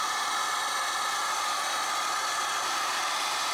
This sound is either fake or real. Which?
real